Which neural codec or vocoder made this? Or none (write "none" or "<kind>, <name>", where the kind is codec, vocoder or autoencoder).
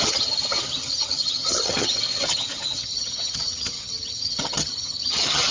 vocoder, HiFi-GAN